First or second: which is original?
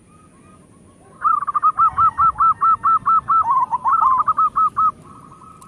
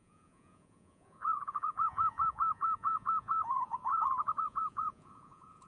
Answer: first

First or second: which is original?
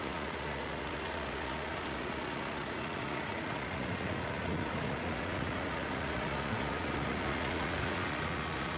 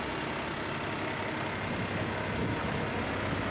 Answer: second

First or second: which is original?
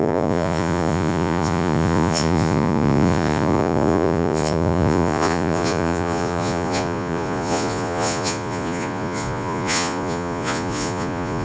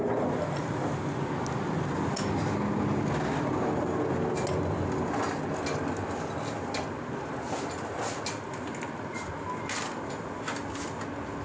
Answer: second